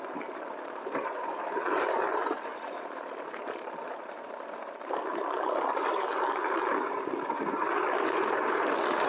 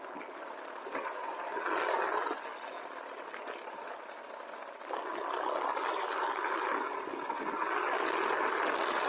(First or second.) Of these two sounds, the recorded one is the second